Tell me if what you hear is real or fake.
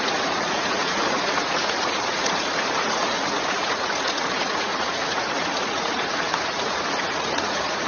fake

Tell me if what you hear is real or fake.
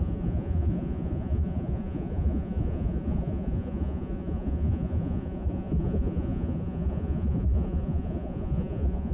fake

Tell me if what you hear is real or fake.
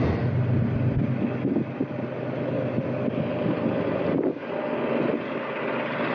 real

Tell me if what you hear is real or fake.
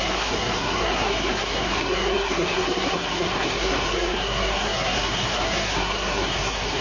fake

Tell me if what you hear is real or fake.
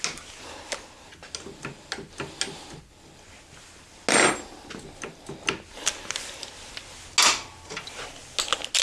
real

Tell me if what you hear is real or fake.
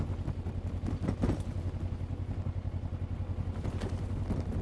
real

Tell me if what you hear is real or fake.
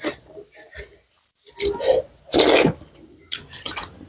real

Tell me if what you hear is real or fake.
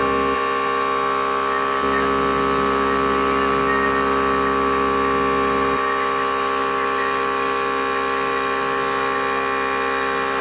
real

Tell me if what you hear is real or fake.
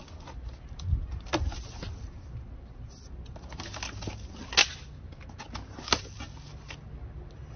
real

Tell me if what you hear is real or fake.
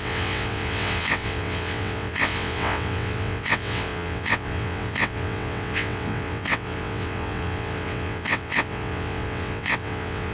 fake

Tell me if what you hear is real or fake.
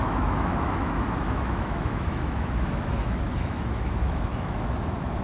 fake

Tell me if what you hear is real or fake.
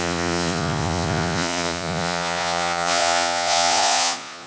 fake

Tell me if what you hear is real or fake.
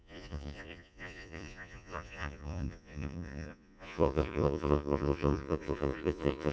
fake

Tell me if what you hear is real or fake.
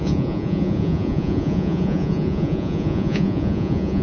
fake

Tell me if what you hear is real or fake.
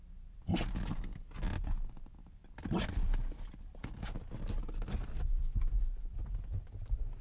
real